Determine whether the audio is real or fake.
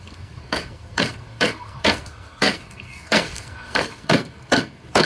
fake